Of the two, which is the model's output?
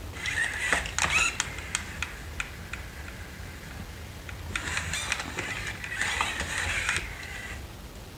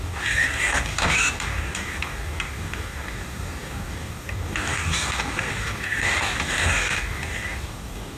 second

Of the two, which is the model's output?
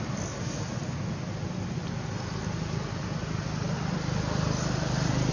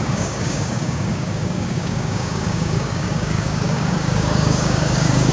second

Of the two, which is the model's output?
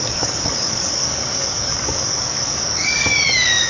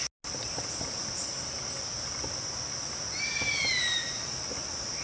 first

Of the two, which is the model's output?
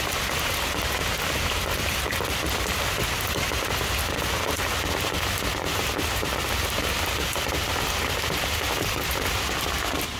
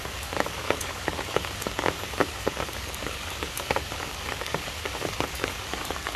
second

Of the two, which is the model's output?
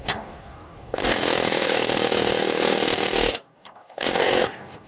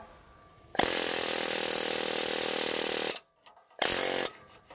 first